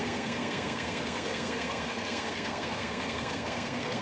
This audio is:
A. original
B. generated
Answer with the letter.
B